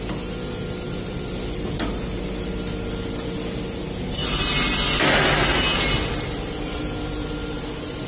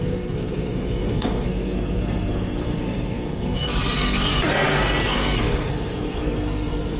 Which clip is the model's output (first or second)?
second